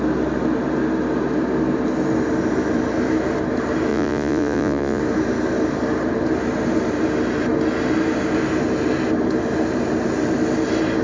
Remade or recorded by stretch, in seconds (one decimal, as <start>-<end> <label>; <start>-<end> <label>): 0.0-3.9 recorded; 3.9-5.0 remade; 5.0-11.0 recorded